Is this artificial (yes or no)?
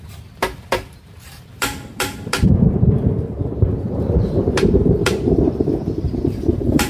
yes